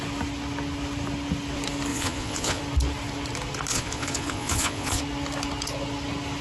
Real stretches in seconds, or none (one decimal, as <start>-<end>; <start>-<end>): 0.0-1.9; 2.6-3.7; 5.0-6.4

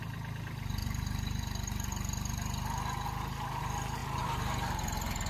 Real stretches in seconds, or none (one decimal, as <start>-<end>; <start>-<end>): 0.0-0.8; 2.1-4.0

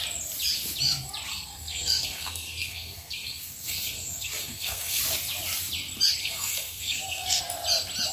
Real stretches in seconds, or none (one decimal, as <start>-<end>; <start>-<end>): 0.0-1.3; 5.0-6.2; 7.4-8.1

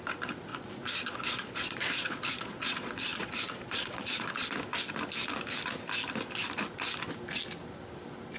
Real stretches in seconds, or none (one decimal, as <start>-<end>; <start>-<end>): 0.0-0.5; 4.3-8.4

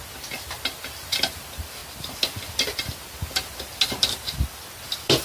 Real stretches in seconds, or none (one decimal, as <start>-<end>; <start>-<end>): 0.0-5.2

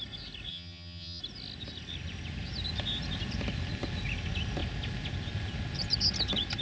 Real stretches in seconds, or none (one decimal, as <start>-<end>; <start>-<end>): 0.0-0.5; 1.2-6.6

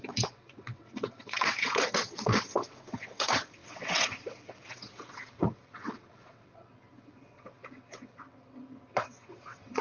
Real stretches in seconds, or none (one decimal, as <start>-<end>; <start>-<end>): none